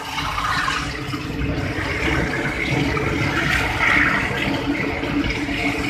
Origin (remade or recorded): recorded